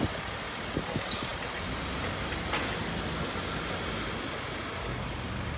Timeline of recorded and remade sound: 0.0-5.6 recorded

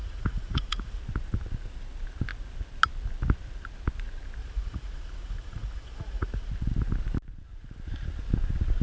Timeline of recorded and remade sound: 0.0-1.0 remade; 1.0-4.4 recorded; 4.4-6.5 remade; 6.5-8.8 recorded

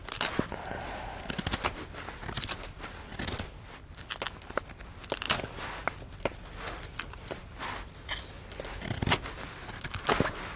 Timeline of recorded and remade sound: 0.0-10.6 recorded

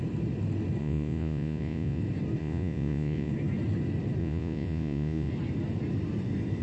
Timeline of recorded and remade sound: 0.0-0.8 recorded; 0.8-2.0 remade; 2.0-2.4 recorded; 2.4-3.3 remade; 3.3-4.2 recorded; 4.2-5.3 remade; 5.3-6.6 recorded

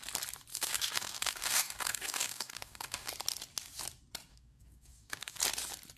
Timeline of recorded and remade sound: 0.0-0.5 recorded; 0.5-3.1 remade; 3.1-4.3 recorded; 4.3-5.4 remade; 5.4-6.0 recorded

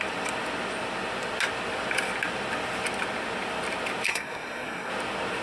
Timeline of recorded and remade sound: 0.0-4.1 recorded; 4.1-4.9 remade; 4.9-5.4 recorded

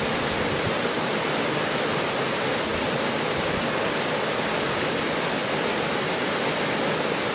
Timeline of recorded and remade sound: 0.0-7.3 recorded